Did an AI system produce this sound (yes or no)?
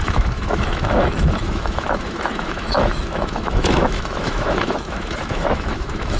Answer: yes